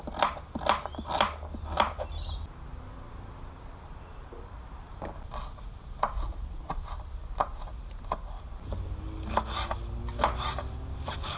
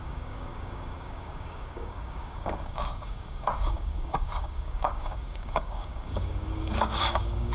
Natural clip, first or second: first